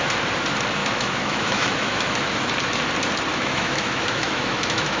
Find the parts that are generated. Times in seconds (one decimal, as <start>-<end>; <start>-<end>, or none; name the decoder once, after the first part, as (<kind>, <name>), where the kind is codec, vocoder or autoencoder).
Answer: 0.8-2.5 (autoencoder, DAC-VAE); 3.3-5.0